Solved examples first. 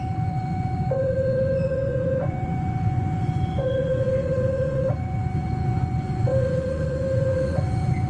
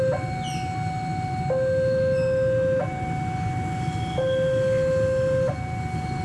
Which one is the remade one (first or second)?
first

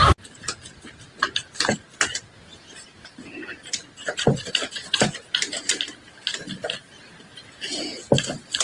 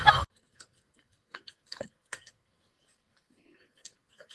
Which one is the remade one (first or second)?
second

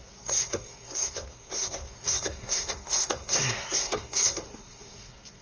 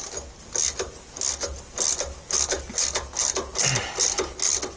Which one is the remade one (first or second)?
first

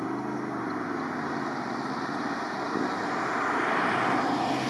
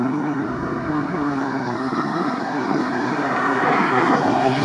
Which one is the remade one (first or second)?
second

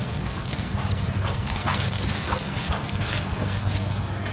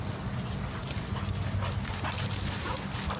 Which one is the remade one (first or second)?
first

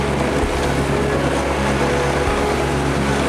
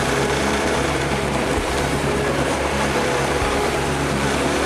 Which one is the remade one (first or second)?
second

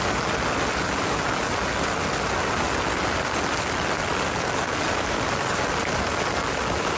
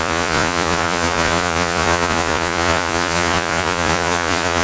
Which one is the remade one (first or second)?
second